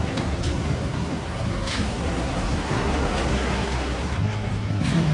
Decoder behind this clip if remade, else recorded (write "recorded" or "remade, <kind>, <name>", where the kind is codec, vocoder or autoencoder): remade, codec, SNAC